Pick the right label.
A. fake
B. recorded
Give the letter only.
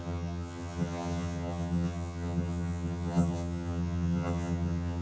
A